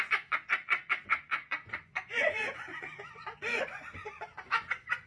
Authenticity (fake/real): fake